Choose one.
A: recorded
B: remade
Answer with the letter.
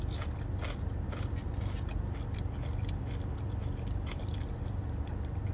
A